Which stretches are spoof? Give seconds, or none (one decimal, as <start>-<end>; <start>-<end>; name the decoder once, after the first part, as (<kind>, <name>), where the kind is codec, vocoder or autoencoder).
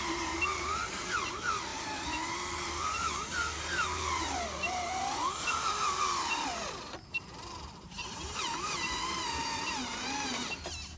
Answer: 0.0-11.0 (vocoder, BigVGAN v2)